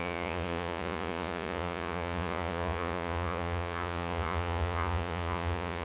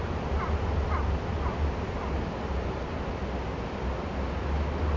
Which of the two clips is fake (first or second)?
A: first